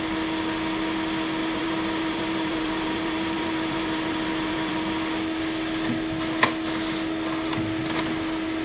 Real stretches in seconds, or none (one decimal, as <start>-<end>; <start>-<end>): 0.0-1.4; 4.8-8.6